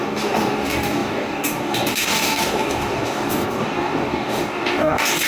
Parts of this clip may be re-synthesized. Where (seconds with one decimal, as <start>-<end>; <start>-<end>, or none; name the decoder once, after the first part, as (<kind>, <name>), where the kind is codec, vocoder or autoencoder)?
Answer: 0.0-5.3 (codec, DAC)